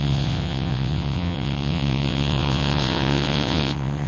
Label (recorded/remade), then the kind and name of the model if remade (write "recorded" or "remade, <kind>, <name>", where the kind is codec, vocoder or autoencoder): remade, vocoder, WaveNeXt